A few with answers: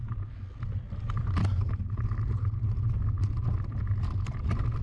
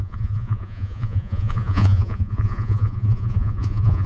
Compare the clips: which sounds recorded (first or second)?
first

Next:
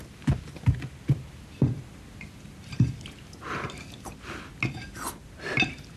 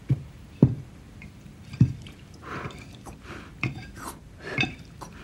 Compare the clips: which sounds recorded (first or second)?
first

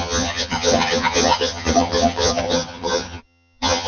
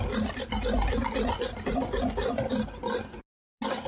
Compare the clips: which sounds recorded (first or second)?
second